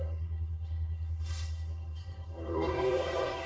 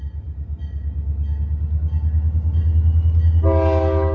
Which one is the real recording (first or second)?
second